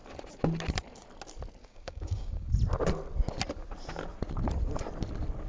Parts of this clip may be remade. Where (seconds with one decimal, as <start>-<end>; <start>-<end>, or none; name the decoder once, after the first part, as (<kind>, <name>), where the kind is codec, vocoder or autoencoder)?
1.6-2.5 (codec, DAC)